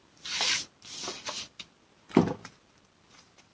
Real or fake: real